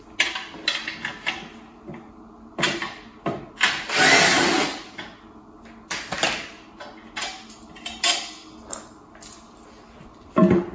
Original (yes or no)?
yes